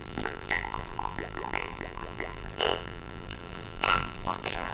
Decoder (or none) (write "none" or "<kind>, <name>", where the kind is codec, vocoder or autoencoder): vocoder, BigVGAN v2